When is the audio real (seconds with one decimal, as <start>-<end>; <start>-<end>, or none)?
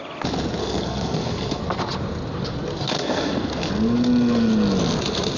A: 0.0-0.6; 1.6-2.7; 3.7-5.4